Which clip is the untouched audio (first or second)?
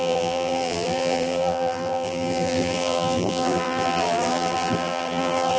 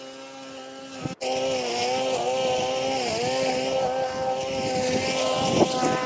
second